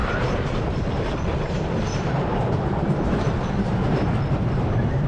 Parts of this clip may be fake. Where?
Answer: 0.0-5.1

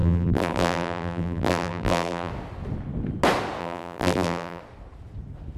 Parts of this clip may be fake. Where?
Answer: 0.0-2.3; 3.6-4.6